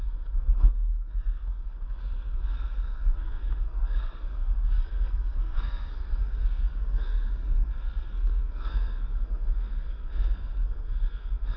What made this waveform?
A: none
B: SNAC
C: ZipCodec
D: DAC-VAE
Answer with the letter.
B